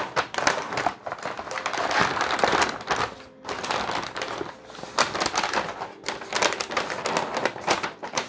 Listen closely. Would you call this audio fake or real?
real